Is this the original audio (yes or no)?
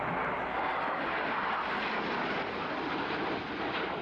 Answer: yes